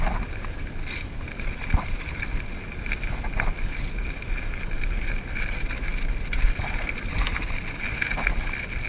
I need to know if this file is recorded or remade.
recorded